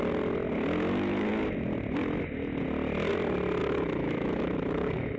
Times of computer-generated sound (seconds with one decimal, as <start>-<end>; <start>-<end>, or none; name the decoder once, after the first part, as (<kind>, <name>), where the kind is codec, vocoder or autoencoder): 3.6-5.2 (autoencoder, DAC-VAE)